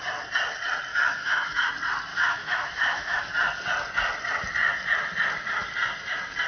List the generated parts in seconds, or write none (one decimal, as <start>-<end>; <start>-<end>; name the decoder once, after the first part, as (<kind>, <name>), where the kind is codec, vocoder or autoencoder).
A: 0.9-1.7 (autoencoder, DAC-VAE); 2.1-3.2